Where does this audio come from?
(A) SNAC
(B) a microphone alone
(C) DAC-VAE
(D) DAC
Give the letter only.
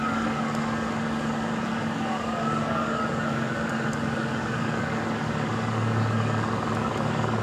D